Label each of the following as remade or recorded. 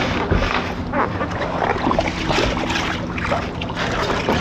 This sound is recorded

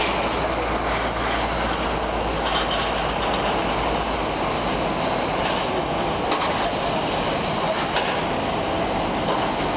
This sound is recorded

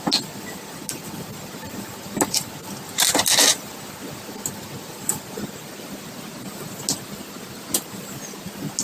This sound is recorded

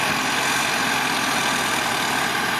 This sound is recorded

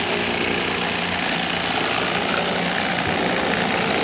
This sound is recorded